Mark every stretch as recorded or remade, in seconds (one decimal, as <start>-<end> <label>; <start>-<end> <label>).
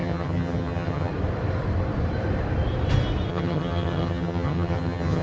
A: 0.0-1.1 remade; 1.1-3.3 recorded; 3.3-5.2 remade